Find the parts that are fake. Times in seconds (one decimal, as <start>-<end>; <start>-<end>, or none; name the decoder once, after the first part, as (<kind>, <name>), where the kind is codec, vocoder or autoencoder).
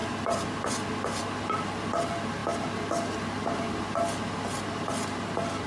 none